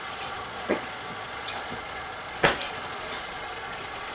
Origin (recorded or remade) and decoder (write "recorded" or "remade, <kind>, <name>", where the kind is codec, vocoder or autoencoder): remade, vocoder, Vocos